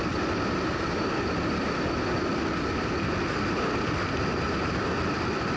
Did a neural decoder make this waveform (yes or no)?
no